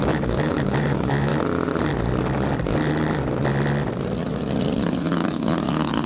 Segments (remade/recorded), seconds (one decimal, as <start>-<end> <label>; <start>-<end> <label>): 0.0-1.3 remade; 1.3-5.0 recorded; 5.0-6.1 remade